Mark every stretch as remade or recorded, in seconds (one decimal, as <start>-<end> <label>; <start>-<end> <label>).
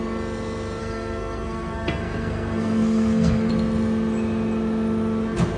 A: 0.0-0.8 recorded; 0.8-3.5 remade; 3.5-5.6 recorded